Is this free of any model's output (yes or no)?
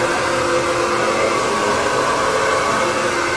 yes